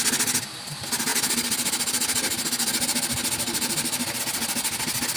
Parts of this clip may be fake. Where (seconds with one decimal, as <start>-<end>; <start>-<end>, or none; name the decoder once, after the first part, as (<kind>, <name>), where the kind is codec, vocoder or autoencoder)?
none